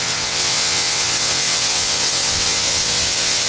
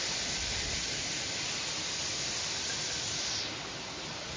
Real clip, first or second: second